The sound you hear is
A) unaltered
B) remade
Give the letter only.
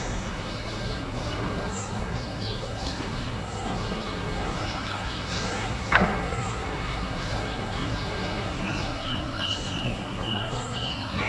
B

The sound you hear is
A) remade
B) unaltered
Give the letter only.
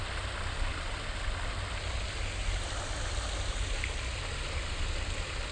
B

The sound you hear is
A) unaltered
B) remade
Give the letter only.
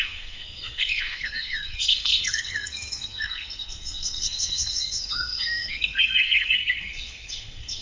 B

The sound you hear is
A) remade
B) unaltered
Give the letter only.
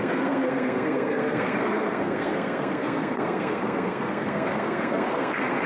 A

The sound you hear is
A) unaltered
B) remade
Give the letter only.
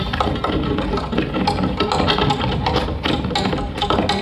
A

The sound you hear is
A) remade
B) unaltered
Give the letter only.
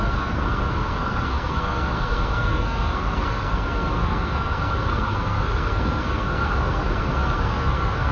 A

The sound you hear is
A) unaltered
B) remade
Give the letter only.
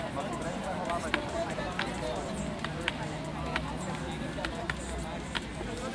A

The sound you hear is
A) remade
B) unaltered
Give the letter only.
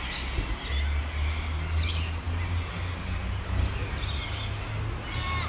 B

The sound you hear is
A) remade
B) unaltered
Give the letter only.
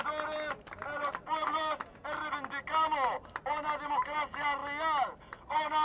B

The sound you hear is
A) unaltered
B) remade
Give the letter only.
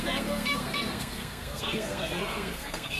B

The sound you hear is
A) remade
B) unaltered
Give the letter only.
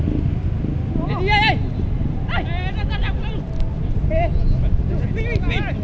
B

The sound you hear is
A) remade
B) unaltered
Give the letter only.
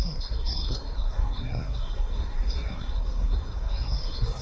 A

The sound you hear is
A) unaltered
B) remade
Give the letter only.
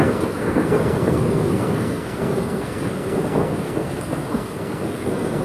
B